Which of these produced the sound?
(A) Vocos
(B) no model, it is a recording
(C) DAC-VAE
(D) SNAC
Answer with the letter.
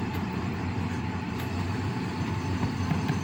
B